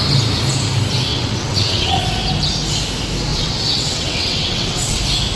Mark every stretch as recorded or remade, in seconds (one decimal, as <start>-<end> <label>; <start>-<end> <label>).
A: 0.0-1.1 recorded; 1.1-2.0 remade; 2.0-3.3 recorded; 3.3-5.0 remade; 5.0-5.4 recorded